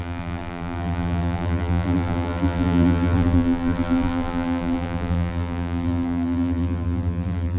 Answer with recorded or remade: remade